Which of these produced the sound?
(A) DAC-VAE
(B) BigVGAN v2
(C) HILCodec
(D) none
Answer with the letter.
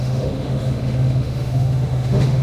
A